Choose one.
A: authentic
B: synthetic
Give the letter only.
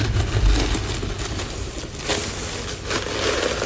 A